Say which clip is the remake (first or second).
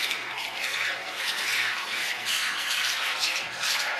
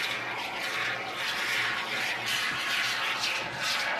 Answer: first